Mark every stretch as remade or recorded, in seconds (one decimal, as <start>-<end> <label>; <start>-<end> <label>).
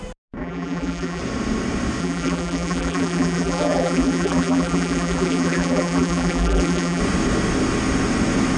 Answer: 0.0-0.4 recorded; 0.4-1.2 remade; 1.2-2.0 recorded; 2.0-7.0 remade; 7.0-8.6 recorded